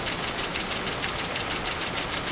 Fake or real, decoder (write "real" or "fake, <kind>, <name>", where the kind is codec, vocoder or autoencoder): real